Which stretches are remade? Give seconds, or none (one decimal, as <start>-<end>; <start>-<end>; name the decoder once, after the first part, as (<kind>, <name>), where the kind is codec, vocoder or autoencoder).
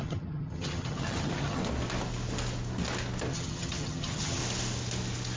0.0-1.6 (vocoder, HiFi-GAN); 3.3-4.4